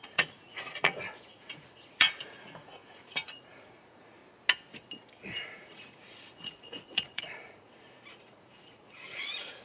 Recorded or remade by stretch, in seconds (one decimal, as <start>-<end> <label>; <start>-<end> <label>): 0.0-4.2 remade; 4.2-5.3 recorded; 5.3-9.6 remade